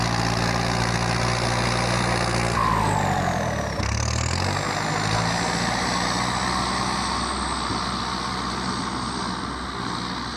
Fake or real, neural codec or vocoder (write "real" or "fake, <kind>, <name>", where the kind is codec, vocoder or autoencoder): real